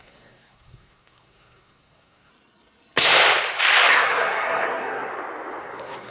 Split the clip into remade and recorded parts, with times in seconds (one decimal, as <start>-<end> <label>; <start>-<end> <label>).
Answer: 0.0-2.3 remade; 2.3-3.9 recorded; 3.9-5.1 remade; 5.1-5.6 recorded; 5.6-6.1 remade